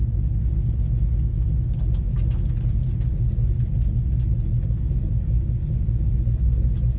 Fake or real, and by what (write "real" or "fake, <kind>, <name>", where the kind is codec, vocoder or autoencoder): real